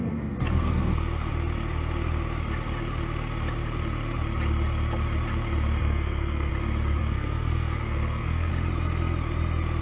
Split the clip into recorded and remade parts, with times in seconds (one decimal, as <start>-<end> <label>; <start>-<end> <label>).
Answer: 0.0-1.3 remade; 1.3-5.8 recorded; 5.8-6.5 remade; 6.5-7.0 recorded; 7.0-8.5 remade; 8.5-9.8 recorded